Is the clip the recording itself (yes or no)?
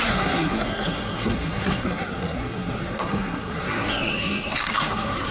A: no